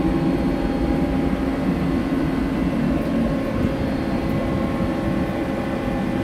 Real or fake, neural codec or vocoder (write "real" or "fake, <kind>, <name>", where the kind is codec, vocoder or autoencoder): real